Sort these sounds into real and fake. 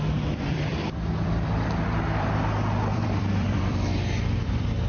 fake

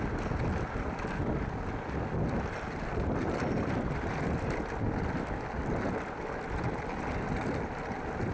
real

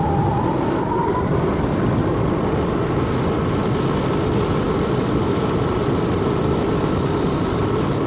real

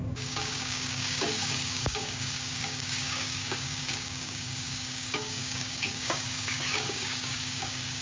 fake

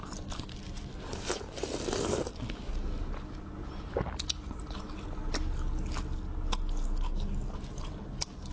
real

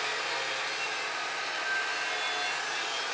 real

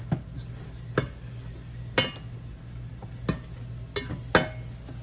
real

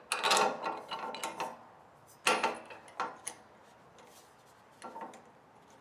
real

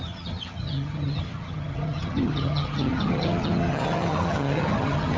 fake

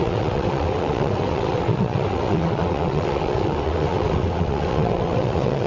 fake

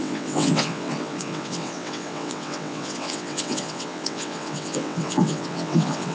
fake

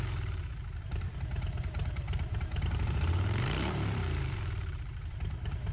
fake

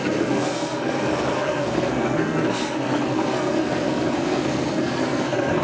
fake